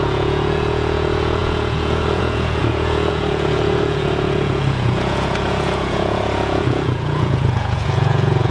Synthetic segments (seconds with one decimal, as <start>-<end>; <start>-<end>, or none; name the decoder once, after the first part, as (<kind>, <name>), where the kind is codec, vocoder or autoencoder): 0.0-8.5 (vocoder, Vocos)